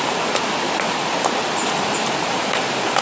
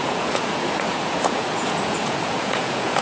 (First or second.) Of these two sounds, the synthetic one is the second